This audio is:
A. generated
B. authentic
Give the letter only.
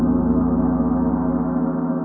A